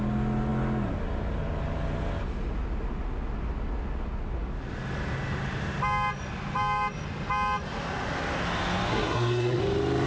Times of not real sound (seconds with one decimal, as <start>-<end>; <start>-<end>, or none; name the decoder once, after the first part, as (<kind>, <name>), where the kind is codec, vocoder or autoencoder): 8.9-9.6 (codec, SNAC)